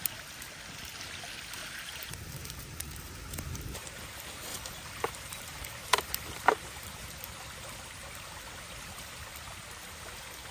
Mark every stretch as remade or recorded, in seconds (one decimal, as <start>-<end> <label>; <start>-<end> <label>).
0.0-1.6 recorded; 1.6-4.0 remade; 4.0-4.5 recorded; 4.5-7.1 remade; 7.1-10.5 recorded